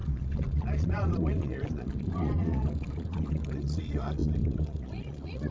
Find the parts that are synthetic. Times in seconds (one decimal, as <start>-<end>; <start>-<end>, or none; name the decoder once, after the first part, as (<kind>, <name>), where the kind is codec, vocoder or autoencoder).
0.0-5.5 (vocoder, Vocos)